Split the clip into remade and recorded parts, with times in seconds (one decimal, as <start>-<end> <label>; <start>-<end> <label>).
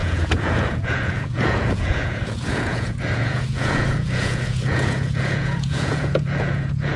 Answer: 0.0-7.0 remade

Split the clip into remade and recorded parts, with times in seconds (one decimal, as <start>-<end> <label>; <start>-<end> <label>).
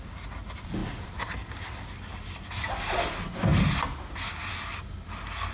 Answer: 0.0-5.5 recorded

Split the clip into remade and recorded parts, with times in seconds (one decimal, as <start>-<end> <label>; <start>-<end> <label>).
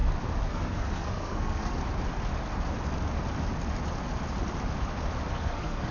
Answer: 0.0-0.5 recorded; 0.5-1.8 remade; 1.8-5.3 recorded; 5.3-5.9 remade